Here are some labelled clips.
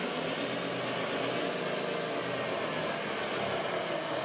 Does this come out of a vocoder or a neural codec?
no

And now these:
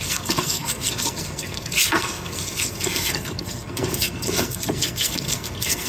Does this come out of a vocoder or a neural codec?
yes